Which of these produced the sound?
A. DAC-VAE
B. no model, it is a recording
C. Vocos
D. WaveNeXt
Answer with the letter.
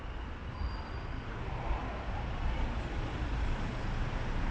B